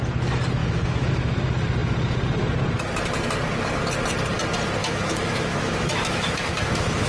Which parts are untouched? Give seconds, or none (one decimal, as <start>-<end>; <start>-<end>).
0.0-0.6; 1.1-4.8